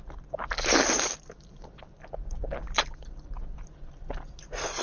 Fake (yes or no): no